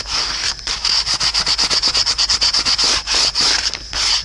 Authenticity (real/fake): real